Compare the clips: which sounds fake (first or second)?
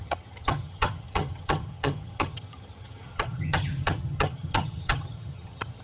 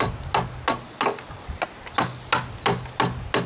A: first